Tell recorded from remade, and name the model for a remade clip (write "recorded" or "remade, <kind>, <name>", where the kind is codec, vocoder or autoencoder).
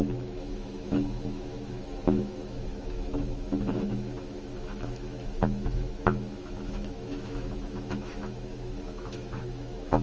remade, autoencoder, DAC-VAE